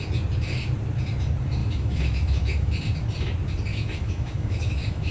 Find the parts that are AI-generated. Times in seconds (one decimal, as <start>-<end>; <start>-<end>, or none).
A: 1.6-2.7; 3.7-5.1